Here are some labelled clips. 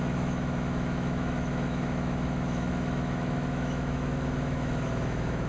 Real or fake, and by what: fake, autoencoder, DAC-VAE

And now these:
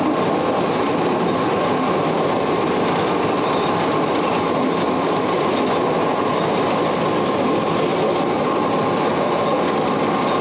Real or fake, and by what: real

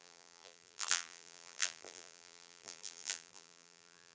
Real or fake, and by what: fake, vocoder, BigVGAN v2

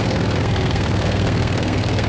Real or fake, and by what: fake, codec, SNAC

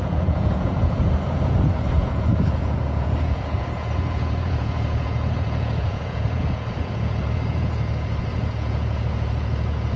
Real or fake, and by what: fake, vocoder, Vocos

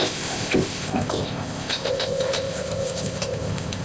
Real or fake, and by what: fake, codec, ZipCodec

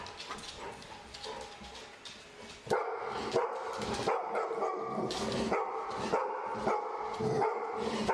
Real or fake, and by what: real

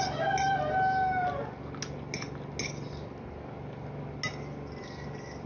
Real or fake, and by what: real